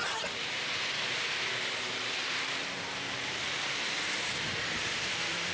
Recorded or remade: remade